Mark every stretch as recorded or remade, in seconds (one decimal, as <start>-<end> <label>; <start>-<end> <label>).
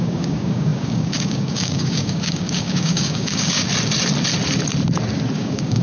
0.0-3.7 remade; 3.7-5.3 recorded; 5.3-5.8 remade